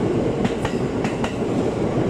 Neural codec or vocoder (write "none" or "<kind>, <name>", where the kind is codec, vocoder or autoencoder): none